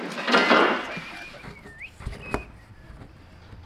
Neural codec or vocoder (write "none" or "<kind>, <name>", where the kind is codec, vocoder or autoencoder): none